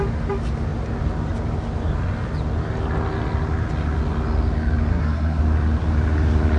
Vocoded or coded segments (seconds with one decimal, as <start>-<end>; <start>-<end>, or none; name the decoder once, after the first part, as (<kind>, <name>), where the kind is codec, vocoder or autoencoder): 4.9-5.4 (codec, SNAC)